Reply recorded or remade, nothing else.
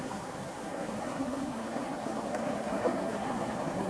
remade